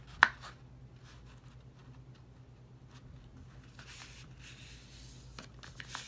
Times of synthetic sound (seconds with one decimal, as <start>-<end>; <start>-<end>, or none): none

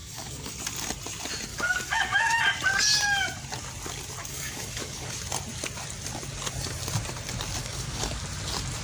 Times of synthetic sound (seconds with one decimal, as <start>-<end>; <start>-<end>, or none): 0.0-0.6; 1.5-2.4; 4.2-5.2; 7.6-8.2